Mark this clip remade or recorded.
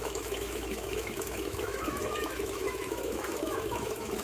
remade